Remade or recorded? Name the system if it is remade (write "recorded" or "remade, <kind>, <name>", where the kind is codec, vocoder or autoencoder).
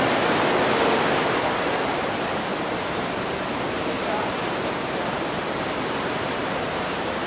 remade, vocoder, BigVGAN v2